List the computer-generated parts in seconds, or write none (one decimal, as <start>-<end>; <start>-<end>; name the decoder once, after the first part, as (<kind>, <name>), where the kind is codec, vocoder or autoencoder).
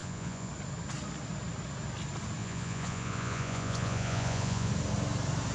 0.0-0.5 (vocoder, Vocos); 2.4-4.7